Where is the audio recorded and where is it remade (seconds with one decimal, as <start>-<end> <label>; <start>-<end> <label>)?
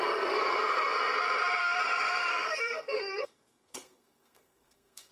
0.0-2.3 recorded; 2.3-5.1 remade